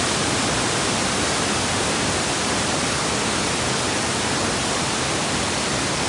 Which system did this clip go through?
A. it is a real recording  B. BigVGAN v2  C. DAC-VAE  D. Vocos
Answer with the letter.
B